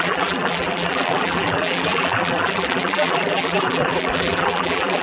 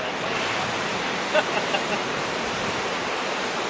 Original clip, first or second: second